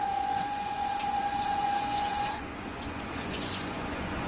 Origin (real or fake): fake